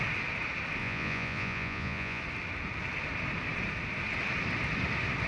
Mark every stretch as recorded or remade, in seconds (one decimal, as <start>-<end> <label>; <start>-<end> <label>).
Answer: 0.0-0.8 recorded; 0.8-2.2 remade; 2.2-5.3 recorded